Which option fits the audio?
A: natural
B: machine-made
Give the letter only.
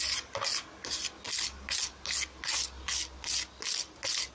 A